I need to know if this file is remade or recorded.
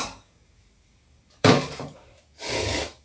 remade